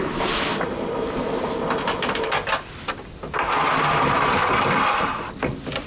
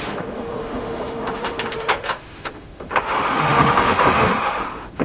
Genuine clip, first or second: first